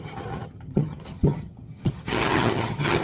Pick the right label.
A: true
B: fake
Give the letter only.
B